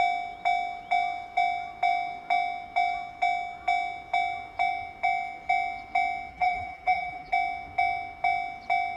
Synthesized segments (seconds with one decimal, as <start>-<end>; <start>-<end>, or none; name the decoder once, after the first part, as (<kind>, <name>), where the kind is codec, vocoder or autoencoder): 6.3-7.3 (vocoder, BigVGAN v2)

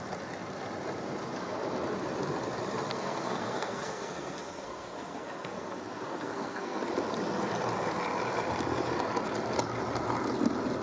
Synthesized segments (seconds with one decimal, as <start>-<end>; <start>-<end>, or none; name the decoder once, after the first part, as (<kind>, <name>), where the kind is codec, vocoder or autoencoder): 2.9-6.8 (codec, SNAC)

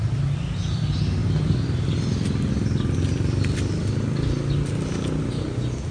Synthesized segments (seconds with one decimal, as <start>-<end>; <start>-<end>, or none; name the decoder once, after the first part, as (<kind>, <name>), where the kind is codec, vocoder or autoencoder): none

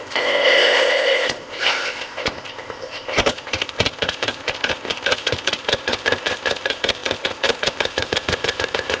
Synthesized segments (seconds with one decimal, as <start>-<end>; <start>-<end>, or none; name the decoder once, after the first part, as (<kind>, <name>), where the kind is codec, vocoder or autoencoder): 0.0-9.0 (codec, ZipCodec)

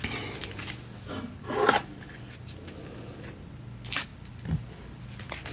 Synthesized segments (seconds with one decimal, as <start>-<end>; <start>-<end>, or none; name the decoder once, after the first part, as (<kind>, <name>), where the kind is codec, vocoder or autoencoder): 4.1-5.0 (vocoder, BigVGAN v2)

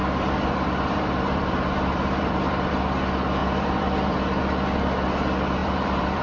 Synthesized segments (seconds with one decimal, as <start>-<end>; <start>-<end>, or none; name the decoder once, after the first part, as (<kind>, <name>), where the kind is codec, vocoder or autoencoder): 0.0-2.7 (vocoder, BigVGAN v2); 3.4-4.4; 5.6-6.2